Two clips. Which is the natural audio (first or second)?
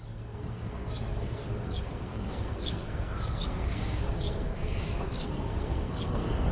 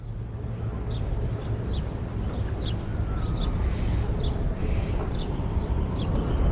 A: second